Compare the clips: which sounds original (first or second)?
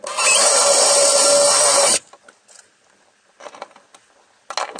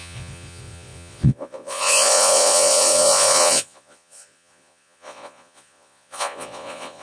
first